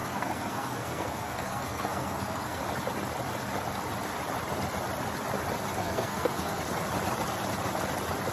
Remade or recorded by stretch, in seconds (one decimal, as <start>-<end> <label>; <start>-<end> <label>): 0.0-2.6 remade; 2.6-5.8 recorded; 5.8-6.6 remade; 6.6-8.3 recorded